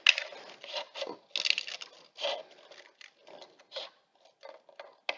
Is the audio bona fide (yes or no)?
yes